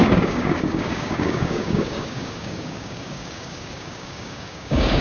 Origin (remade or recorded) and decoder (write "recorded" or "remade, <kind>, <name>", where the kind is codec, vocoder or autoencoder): remade, codec, DAC